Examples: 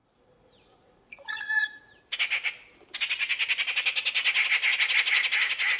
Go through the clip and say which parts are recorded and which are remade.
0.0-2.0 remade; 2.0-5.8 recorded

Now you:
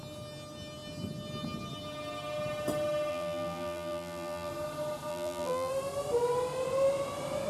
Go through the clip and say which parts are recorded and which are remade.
0.0-3.1 recorded; 3.1-4.5 remade; 4.5-5.1 recorded; 5.1-5.7 remade; 5.7-7.5 recorded